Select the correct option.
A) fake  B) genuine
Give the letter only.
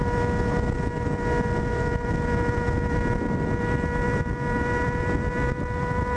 B